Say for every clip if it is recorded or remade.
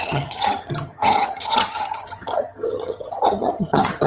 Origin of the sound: remade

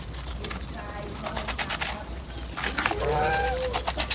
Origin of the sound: recorded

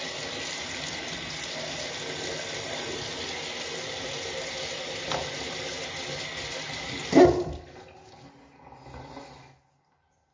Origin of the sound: recorded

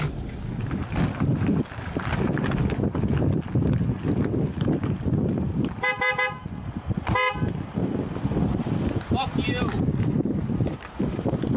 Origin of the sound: recorded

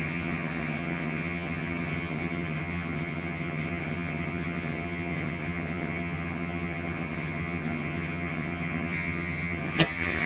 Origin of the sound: remade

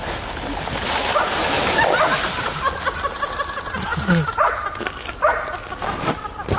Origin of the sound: recorded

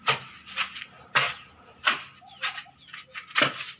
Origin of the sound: recorded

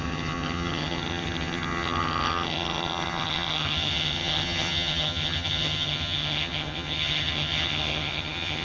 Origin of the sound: remade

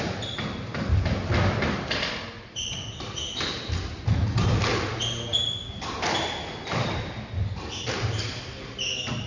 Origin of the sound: recorded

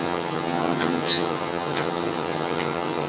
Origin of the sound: remade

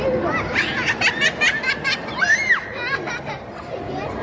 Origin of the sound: recorded